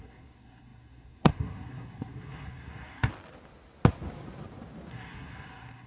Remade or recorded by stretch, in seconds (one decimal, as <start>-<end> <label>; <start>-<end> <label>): 0.0-3.1 remade; 3.1-4.9 recorded; 4.9-5.9 remade